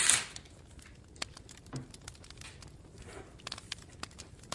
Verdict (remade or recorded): recorded